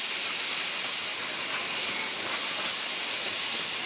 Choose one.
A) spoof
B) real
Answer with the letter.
B